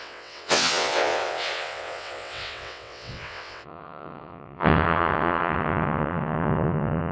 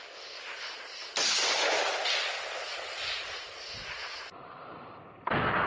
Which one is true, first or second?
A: second